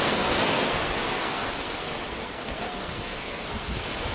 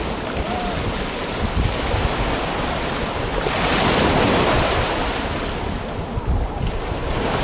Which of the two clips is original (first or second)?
second